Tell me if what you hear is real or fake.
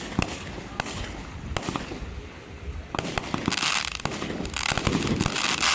real